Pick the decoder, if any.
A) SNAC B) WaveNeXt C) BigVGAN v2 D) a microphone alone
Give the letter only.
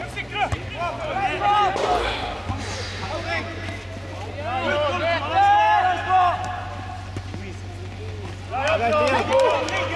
D